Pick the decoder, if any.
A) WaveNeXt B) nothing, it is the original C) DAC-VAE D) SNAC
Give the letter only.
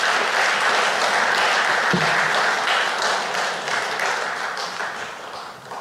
B